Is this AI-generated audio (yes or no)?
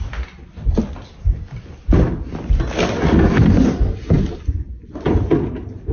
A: no